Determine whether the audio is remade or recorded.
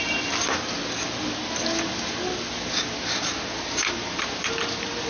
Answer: recorded